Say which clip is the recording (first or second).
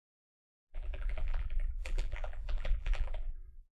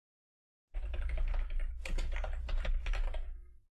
second